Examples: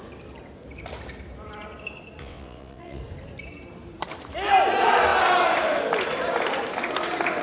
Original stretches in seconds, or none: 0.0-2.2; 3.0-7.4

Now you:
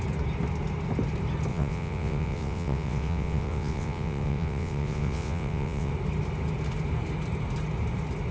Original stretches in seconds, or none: 0.0-1.5; 5.9-8.3

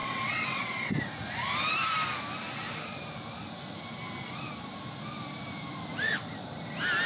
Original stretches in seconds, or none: 0.9-7.1

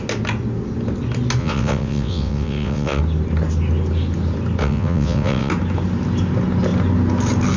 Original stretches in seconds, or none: 0.0-1.4; 3.0-4.6; 5.5-7.6

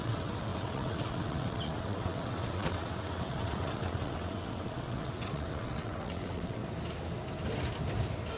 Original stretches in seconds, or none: 6.6-8.4

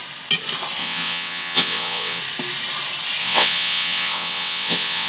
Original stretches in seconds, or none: 0.0-0.8; 2.2-3.2